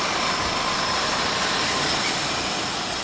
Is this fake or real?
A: real